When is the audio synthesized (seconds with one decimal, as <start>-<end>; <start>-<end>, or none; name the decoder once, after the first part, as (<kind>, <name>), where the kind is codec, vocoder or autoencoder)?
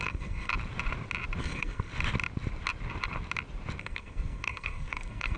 0.0-0.5 (codec, SNAC); 1.4-1.9; 3.8-5.4